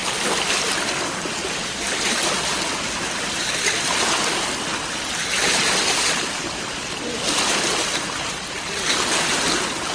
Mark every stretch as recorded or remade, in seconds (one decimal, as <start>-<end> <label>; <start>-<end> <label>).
0.0-0.8 recorded; 0.8-9.9 remade